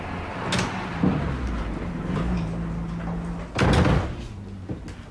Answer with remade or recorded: recorded